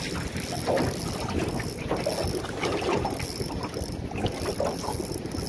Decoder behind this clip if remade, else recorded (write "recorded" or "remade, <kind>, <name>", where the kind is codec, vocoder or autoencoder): recorded